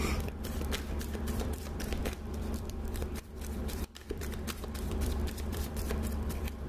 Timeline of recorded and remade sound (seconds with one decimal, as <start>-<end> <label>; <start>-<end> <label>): 0.0-6.7 remade